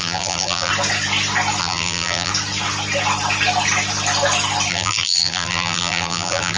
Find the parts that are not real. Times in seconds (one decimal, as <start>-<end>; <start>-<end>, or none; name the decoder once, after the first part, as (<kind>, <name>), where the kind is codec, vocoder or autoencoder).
0.0-0.7 (vocoder, BigVGAN v2); 1.6-2.3; 4.7-6.6